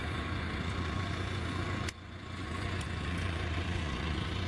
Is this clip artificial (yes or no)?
yes